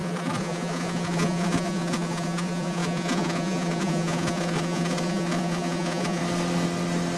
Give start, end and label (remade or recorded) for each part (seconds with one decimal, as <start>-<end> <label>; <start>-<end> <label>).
0.0-6.2 remade; 6.2-7.2 recorded